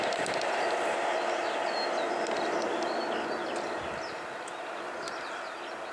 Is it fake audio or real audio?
real